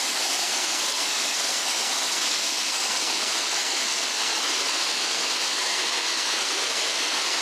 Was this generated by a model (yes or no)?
yes